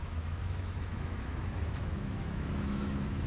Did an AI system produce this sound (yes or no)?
yes